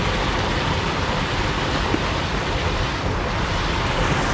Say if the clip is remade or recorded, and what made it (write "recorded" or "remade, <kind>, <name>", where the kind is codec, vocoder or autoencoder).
remade, vocoder, BigVGAN v2